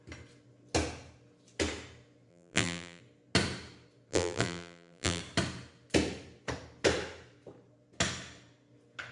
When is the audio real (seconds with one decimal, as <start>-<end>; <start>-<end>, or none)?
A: 0.0-2.3; 3.0-4.1; 5.2-9.1